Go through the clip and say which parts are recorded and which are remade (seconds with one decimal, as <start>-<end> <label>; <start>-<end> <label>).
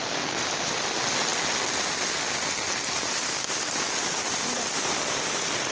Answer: 0.0-5.7 recorded